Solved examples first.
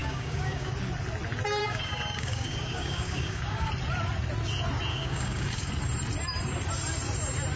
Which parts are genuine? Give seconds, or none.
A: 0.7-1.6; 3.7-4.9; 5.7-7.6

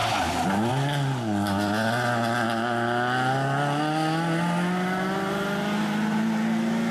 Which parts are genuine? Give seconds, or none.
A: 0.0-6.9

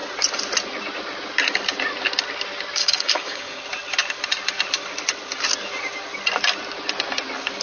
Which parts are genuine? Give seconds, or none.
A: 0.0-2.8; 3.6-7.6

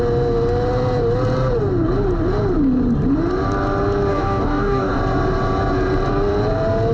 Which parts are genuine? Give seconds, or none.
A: 0.0-4.1; 5.0-6.9